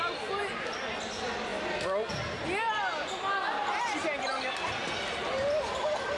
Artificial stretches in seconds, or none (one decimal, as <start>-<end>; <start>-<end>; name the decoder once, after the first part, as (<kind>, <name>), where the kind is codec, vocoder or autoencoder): none